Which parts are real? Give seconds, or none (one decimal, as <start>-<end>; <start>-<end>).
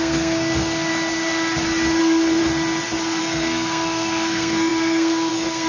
0.9-2.0; 2.4-3.2